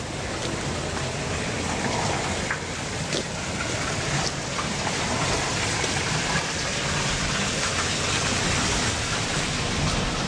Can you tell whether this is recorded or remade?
recorded